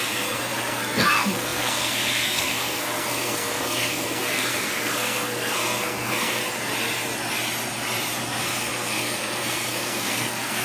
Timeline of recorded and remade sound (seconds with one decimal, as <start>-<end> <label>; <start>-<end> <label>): 0.0-6.4 remade; 6.4-8.4 recorded; 8.4-10.6 remade